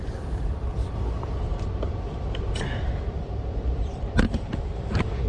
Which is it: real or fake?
fake